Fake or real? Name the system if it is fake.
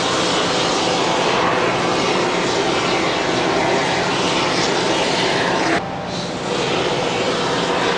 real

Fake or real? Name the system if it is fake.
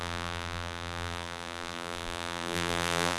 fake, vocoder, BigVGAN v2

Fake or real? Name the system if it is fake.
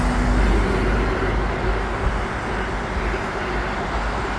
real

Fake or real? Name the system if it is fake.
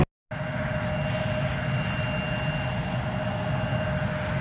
real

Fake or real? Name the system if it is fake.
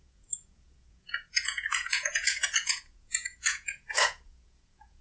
fake, vocoder, Vocos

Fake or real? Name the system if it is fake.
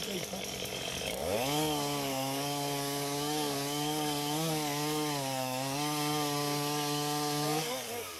fake, codec, DAC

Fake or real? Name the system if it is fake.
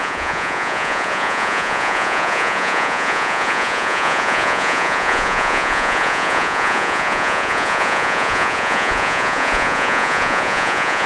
fake, vocoder, Vocos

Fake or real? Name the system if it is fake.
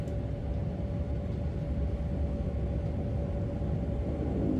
real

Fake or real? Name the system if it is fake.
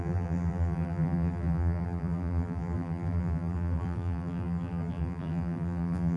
fake, vocoder, BigVGAN v2